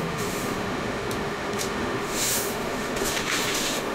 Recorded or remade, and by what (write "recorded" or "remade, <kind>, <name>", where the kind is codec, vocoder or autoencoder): remade, autoencoder, DAC-VAE